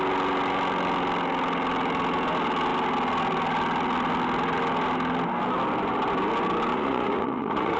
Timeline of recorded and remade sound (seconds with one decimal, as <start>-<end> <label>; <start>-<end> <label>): 0.0-6.7 recorded; 6.7-7.8 remade